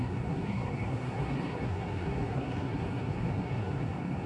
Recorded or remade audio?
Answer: remade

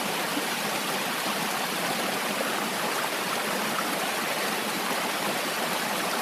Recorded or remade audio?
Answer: recorded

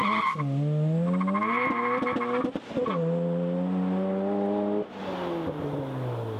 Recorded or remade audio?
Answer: recorded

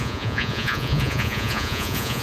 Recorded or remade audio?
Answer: remade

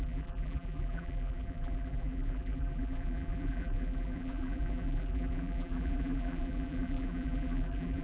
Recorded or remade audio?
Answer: remade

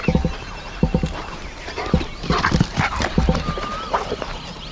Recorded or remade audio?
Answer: recorded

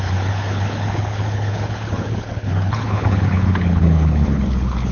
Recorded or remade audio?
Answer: remade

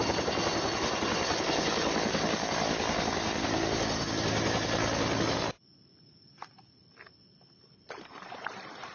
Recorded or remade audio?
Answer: recorded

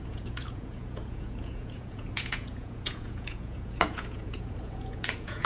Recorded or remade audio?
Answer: remade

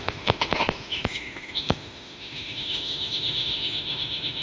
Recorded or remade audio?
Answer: remade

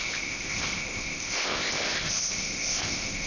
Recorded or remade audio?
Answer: remade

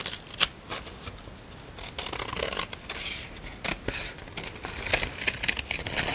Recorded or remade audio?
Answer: recorded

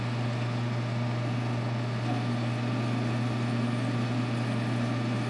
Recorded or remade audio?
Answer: recorded